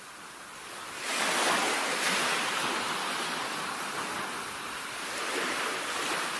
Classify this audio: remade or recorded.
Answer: recorded